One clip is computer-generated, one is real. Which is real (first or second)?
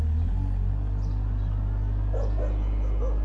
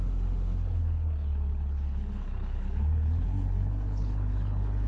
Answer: first